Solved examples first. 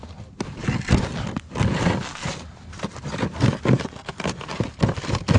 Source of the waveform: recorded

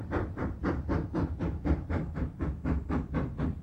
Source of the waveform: remade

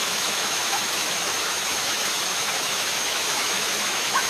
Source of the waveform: remade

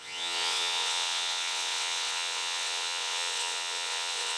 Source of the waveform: remade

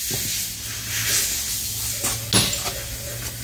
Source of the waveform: recorded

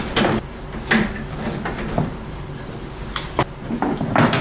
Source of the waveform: recorded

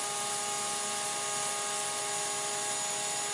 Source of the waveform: recorded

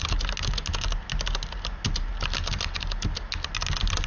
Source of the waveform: recorded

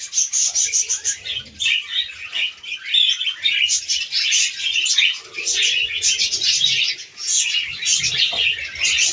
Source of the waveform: recorded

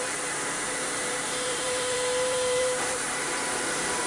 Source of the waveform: remade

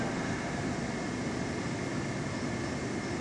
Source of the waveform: recorded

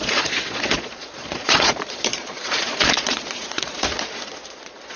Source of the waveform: remade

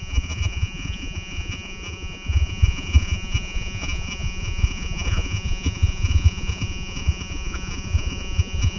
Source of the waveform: remade